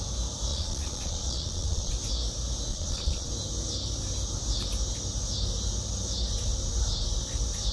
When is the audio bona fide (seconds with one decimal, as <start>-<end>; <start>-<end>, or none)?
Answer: 0.0-0.5; 1.9-2.7; 3.3-7.7